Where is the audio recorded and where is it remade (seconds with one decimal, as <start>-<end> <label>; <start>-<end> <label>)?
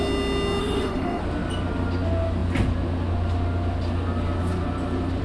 0.0-0.6 recorded; 0.6-1.2 remade; 1.2-5.2 recorded